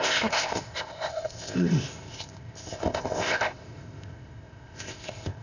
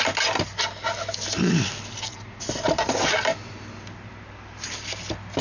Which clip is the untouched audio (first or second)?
second